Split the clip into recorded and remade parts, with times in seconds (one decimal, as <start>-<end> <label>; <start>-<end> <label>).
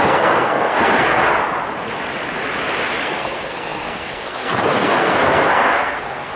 0.0-1.2 remade; 1.2-3.0 recorded; 3.0-6.4 remade